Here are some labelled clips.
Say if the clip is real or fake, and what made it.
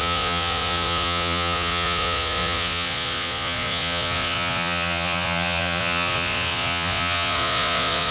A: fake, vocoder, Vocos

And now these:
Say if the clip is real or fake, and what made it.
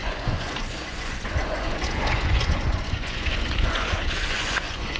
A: fake, vocoder, Vocos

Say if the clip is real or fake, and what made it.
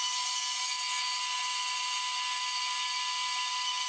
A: real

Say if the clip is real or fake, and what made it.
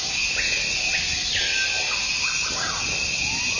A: real